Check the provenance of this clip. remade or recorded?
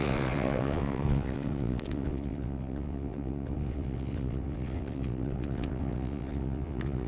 remade